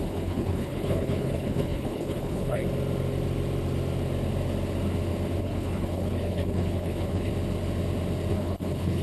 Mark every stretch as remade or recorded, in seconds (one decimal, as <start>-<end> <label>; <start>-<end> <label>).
0.0-2.6 remade; 2.6-5.4 recorded; 5.4-7.3 remade; 7.3-8.3 recorded; 8.3-9.0 remade